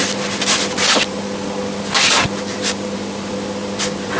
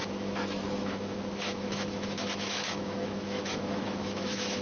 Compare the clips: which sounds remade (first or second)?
second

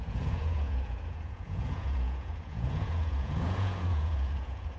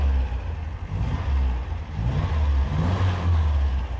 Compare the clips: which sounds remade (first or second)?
first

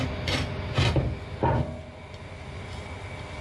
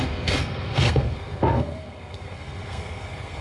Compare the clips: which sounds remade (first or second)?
second